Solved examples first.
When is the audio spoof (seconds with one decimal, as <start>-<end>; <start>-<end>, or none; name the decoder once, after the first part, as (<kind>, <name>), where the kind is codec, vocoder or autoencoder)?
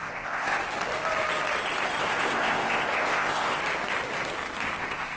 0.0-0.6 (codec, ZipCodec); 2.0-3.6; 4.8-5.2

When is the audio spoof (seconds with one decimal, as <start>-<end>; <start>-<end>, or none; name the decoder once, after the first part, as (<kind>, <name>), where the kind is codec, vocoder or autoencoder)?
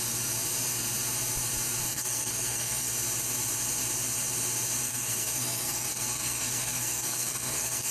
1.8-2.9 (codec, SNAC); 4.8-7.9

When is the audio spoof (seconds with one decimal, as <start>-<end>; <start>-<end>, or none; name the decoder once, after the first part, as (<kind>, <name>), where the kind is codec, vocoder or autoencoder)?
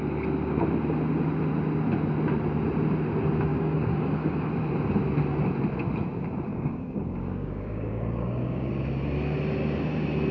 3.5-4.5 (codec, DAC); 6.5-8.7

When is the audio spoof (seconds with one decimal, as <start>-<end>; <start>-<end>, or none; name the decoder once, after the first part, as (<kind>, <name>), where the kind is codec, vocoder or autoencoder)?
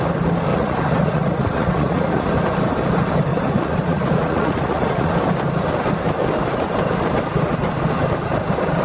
0.5-2.3 (vocoder, Vocos); 3.3-5.1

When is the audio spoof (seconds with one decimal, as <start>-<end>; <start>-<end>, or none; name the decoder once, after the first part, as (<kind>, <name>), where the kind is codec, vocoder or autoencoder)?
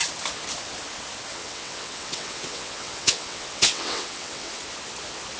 1.3-4.5 (vocoder, WaveNeXt)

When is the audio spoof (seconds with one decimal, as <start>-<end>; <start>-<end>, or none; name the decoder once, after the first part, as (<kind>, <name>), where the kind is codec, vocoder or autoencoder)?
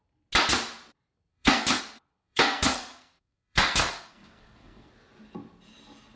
1.3-1.8 (codec, SNAC); 2.2-4.9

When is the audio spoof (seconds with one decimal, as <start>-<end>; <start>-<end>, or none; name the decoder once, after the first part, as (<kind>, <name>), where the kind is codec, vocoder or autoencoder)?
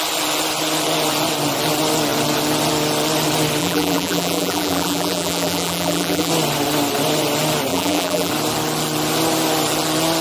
3.6-6.3 (vocoder, BigVGAN v2); 7.7-8.3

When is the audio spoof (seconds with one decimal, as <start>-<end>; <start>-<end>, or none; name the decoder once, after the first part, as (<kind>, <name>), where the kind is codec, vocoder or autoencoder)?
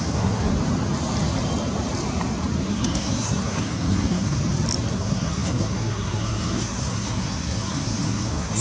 0.0-0.5 (codec, SNAC); 2.7-4.4; 4.9-8.6